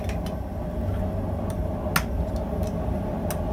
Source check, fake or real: real